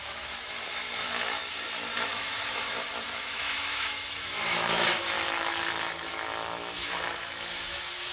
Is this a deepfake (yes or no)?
yes